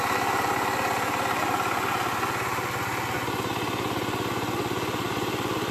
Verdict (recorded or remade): recorded